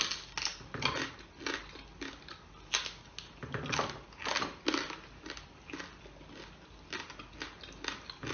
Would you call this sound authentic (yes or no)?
yes